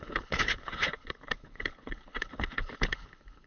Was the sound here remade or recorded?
remade